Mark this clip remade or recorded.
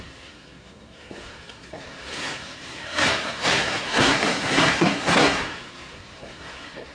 remade